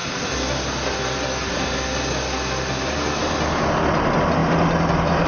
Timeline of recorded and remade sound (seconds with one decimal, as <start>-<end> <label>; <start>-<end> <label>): 0.0-5.3 recorded